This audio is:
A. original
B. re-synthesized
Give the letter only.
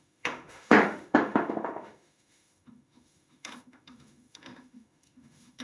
B